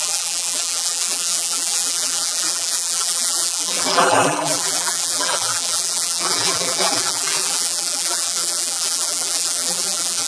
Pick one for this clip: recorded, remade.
remade